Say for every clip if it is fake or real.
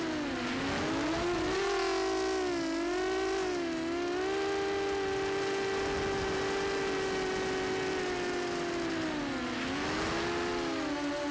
real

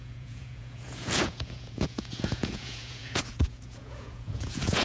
fake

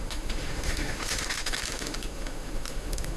fake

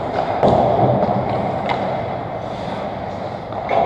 real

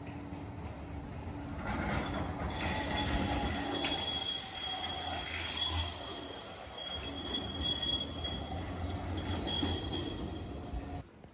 real